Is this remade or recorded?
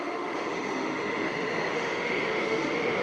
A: remade